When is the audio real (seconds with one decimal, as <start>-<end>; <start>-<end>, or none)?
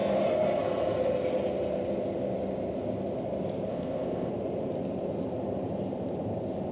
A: 0.0-3.7; 4.3-6.7